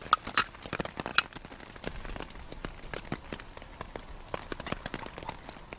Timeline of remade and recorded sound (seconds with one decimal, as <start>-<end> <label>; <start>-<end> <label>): 0.0-5.8 recorded